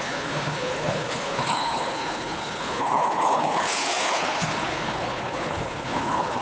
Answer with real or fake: fake